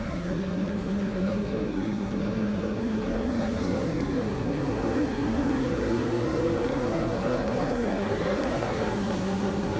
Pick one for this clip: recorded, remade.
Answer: remade